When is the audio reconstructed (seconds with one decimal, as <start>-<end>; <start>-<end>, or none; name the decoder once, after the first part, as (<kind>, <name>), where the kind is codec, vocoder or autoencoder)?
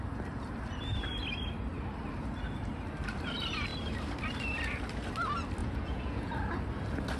5.6-6.3 (vocoder, Vocos)